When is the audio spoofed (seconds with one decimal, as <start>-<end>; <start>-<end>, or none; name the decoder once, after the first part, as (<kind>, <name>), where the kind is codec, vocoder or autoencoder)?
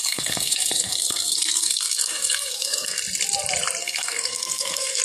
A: 0.0-3.0 (codec, SNAC); 3.8-5.0